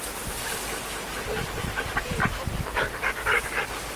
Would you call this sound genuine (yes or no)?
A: yes